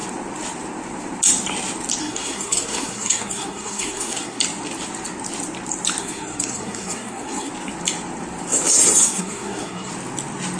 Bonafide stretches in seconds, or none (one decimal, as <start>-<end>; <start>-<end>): 0.0-2.0; 4.4-6.0; 7.5-9.0; 9.9-10.6